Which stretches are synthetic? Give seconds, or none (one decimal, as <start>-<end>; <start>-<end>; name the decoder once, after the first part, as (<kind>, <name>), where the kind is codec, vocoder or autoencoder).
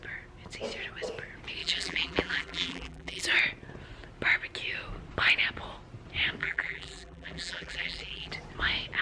1.6-3.2 (vocoder, BigVGAN v2); 6.4-8.3